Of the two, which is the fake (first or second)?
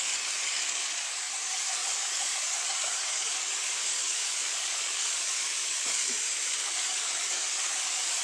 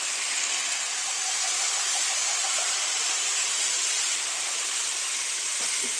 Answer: first